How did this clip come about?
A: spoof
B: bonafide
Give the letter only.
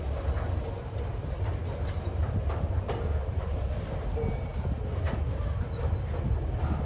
B